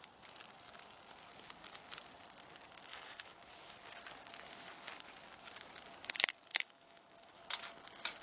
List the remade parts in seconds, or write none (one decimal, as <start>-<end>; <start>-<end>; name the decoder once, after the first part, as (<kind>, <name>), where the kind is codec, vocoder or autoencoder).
2.9-3.4 (autoencoder, DAC-VAE); 6.5-7.4